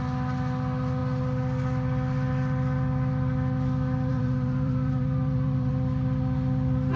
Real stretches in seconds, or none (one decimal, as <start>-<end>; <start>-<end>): 0.0-4.1; 5.7-7.0